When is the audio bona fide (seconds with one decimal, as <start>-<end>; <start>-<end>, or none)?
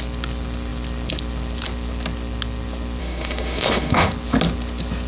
0.0-3.0; 4.1-5.1